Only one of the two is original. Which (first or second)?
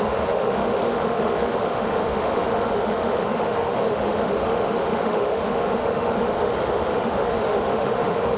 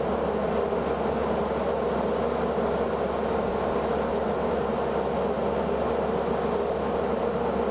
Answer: second